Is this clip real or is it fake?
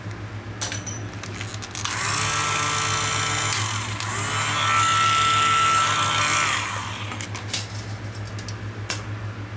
real